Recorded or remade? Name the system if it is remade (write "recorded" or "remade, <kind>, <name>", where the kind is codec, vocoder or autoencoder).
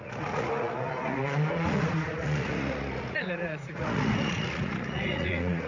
remade, vocoder, Vocos